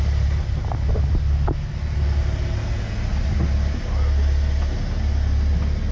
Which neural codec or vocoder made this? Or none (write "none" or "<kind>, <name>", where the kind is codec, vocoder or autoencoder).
none